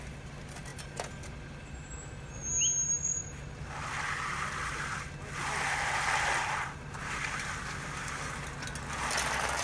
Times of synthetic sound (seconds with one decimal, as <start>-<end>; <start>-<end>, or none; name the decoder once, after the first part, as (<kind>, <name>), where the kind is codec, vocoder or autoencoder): none